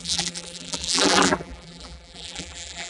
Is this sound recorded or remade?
remade